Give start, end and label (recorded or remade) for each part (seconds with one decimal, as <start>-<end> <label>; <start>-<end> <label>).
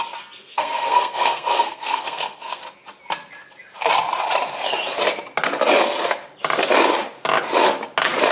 0.0-0.4 recorded; 0.4-2.6 remade; 2.6-8.3 recorded